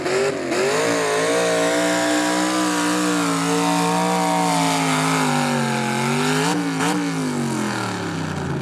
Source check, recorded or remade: recorded